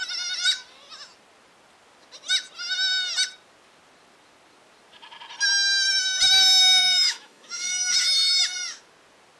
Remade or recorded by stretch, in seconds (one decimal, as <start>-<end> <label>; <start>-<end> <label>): 0.0-6.8 recorded; 6.8-8.4 remade; 8.4-9.4 recorded